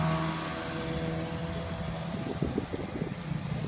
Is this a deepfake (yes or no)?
no